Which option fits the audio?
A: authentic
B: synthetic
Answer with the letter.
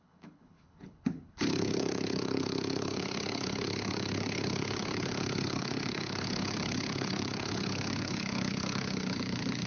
B